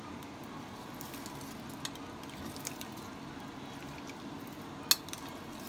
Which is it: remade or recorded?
recorded